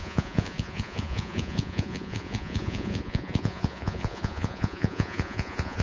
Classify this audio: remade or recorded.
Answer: remade